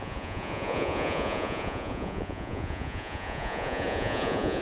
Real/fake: fake